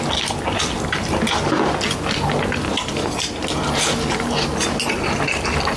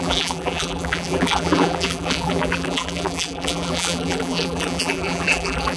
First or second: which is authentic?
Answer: first